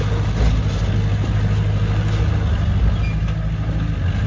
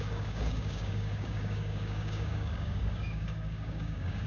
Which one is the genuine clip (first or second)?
first